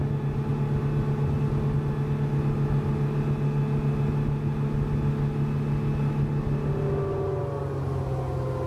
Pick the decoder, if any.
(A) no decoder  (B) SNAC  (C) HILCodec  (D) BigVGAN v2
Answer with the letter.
A